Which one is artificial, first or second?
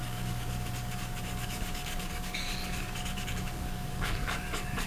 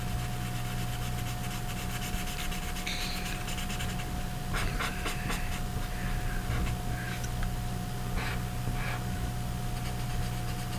first